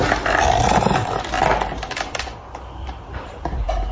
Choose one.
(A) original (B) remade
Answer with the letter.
A